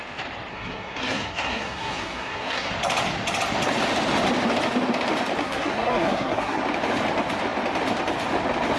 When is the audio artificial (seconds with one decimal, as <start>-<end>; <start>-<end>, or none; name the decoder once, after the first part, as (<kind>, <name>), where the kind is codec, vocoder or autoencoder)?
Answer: 0.5-2.7 (codec, SNAC); 5.4-6.6